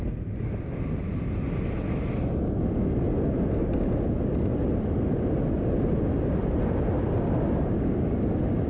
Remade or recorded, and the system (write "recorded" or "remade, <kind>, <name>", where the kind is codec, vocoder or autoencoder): recorded